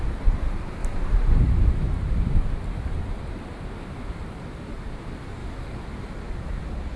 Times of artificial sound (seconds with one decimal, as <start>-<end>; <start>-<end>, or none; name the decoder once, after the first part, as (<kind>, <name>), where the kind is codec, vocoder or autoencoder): 0.0-7.0 (vocoder, BigVGAN v2)